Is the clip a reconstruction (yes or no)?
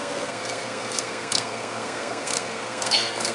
yes